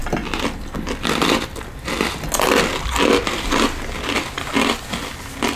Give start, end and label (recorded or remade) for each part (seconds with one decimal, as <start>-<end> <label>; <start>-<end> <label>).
0.0-5.6 recorded